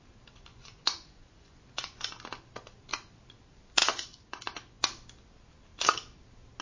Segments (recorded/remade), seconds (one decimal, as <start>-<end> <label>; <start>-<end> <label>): 0.0-0.5 recorded; 0.5-2.0 remade; 2.0-3.8 recorded; 3.8-4.8 remade; 4.8-6.6 recorded